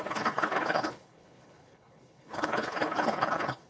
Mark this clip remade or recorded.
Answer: remade